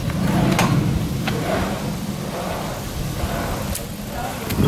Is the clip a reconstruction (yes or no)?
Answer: no